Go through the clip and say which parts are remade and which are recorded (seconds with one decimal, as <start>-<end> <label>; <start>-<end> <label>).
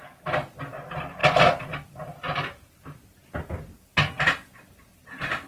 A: 0.0-5.5 recorded